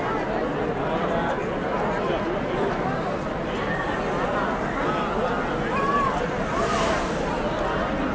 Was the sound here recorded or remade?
recorded